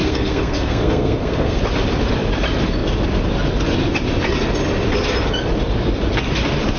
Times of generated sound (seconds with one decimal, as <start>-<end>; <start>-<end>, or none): 0.0-1.6